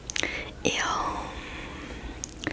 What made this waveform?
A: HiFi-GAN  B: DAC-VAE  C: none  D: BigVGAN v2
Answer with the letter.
C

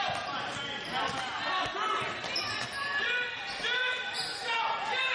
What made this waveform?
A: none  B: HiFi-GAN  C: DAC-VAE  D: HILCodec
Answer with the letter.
A